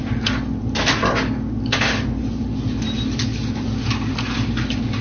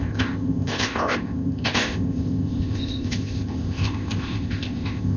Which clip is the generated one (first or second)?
second